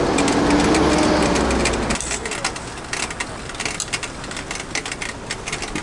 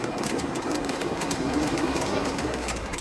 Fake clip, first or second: second